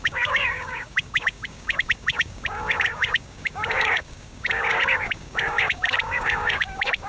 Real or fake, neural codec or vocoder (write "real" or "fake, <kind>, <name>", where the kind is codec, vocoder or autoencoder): fake, codec, DAC